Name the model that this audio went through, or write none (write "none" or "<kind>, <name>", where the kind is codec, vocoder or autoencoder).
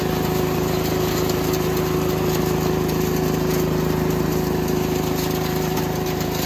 none